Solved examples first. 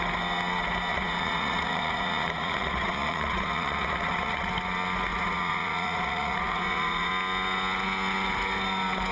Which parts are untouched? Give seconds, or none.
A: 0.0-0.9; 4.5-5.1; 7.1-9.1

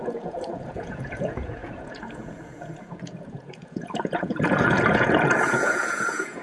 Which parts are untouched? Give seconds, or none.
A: none

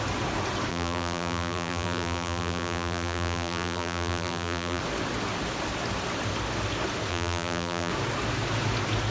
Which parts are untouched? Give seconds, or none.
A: 0.0-0.7; 4.8-7.1; 7.9-9.1

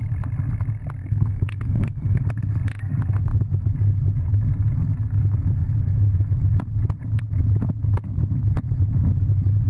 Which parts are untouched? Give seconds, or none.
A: 0.0-1.0; 2.2-9.7

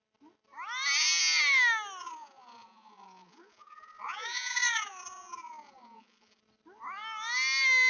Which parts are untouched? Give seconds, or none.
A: 0.0-2.0; 6.4-7.9

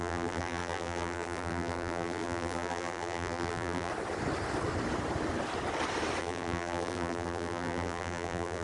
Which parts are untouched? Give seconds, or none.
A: 3.9-6.2

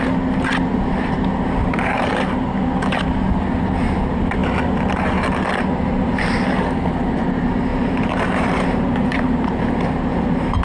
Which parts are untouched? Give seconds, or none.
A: 0.0-1.6; 2.1-7.7; 9.7-10.6